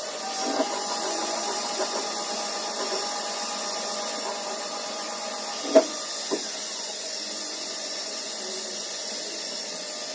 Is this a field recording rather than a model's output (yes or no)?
no